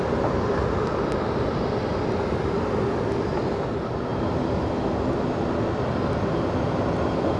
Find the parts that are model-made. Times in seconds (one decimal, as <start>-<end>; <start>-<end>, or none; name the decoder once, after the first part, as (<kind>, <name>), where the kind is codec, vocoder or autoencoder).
none